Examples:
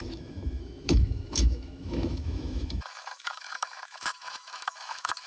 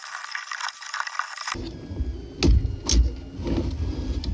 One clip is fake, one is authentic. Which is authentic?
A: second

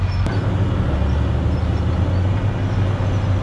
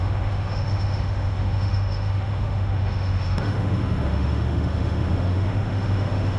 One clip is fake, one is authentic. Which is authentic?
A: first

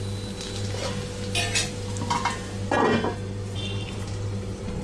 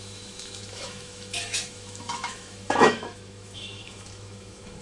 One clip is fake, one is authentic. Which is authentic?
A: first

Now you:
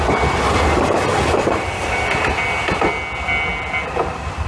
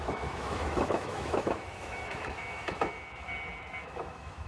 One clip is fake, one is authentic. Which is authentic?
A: first